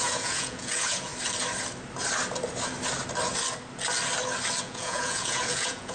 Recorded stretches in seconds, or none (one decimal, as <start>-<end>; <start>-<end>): 1.1-4.6